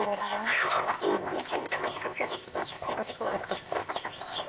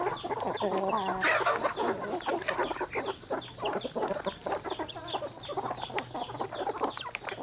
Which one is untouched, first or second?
second